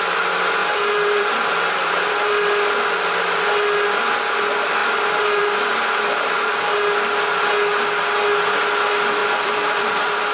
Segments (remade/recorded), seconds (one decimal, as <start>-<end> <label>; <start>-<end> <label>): 0.0-0.6 recorded; 0.6-2.4 remade; 2.4-4.8 recorded; 4.8-6.5 remade; 6.5-9.2 recorded; 9.2-10.3 remade